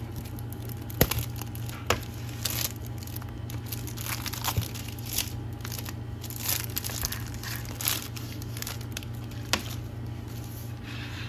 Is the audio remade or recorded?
recorded